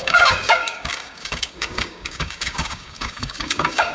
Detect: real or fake fake